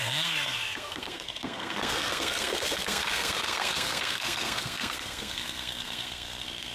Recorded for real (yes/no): no